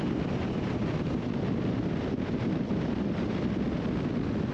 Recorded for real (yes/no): yes